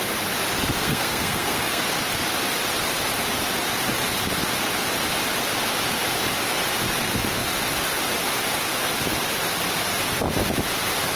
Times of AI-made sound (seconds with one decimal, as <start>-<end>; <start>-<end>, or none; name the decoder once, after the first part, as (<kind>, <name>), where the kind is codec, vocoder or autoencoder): 0.8-1.8 (codec, SNAC)